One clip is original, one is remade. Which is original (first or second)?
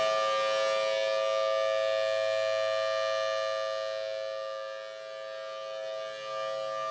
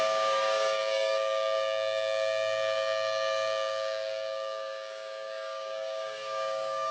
first